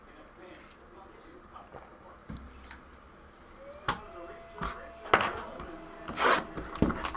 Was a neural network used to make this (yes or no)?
no